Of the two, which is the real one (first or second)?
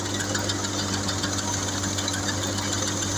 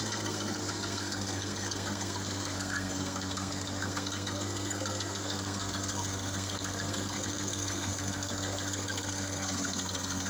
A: first